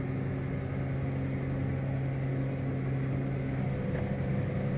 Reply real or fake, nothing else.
real